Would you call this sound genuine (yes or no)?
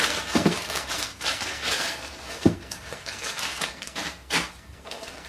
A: no